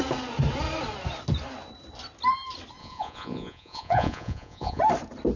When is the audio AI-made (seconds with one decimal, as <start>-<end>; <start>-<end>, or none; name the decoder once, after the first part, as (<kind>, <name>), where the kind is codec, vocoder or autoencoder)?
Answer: 2.8-4.8 (vocoder, Vocos)